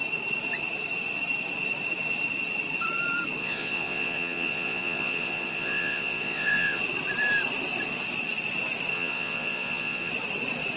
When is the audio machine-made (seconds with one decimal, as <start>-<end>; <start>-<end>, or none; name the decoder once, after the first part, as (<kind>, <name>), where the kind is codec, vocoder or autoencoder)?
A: 3.4-6.8 (vocoder, Vocos); 8.9-10.1